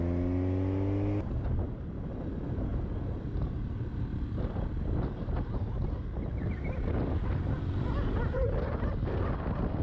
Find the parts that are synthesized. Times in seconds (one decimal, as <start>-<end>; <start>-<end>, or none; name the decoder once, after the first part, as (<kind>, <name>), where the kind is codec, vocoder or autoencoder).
none